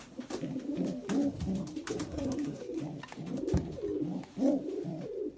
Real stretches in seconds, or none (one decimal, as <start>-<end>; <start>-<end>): 0.0-2.1; 2.8-5.4